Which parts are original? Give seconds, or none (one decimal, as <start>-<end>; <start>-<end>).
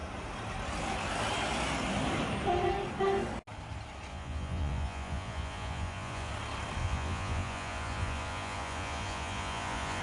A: 0.0-4.1; 6.3-6.8